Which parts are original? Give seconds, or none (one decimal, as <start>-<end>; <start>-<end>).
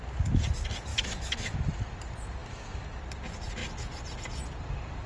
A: 0.0-0.9; 1.8-2.4; 3.0-5.1